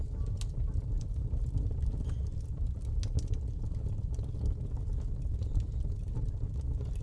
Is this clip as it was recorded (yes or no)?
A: yes